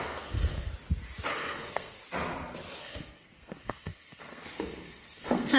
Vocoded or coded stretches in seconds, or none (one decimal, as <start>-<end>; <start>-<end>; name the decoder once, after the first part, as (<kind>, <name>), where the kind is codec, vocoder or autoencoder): 0.0-0.7 (codec, SNAC); 1.3-2.0; 2.8-5.6